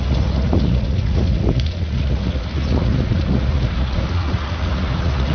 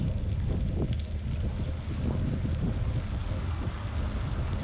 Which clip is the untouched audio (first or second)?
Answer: second